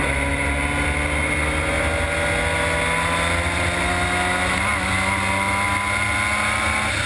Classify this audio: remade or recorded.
recorded